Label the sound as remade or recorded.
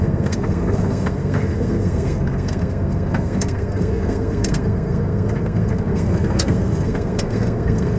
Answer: remade